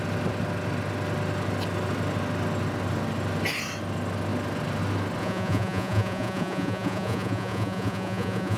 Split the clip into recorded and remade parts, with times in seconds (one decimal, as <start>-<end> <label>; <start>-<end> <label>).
0.0-5.2 recorded; 5.2-8.6 remade